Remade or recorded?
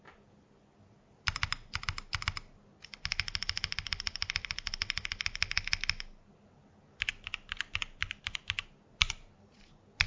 recorded